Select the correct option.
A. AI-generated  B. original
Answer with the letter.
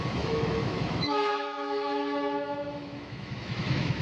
A